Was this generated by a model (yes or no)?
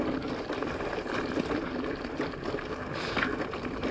no